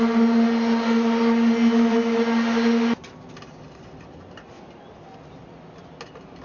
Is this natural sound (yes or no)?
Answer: yes